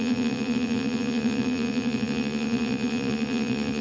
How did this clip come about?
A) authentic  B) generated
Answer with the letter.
B